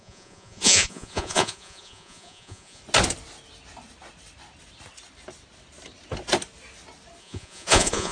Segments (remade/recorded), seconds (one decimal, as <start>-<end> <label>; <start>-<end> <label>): 0.0-2.8 remade; 2.8-7.2 recorded; 7.2-8.1 remade